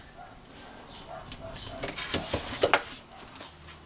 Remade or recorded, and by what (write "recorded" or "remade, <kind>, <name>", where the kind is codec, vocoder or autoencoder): recorded